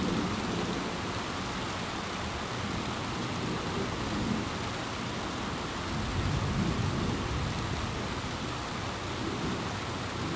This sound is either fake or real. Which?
real